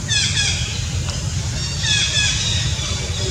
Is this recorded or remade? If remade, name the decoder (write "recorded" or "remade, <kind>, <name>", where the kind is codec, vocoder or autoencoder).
recorded